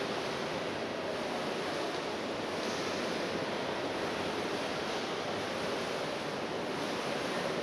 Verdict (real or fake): real